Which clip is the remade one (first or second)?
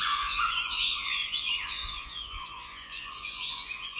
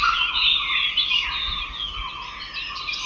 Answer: first